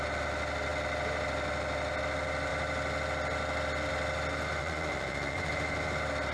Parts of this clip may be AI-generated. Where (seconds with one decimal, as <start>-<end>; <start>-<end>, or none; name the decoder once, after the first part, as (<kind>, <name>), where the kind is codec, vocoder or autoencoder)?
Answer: 4.6-5.5 (vocoder, Vocos)